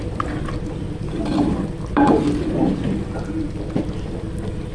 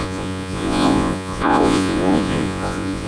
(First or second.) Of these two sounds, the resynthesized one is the second